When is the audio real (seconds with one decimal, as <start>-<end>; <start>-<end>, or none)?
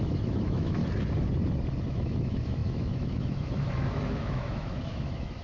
0.8-1.9